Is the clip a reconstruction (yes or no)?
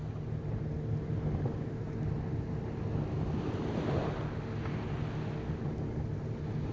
no